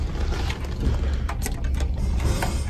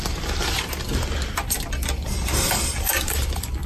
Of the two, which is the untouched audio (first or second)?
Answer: first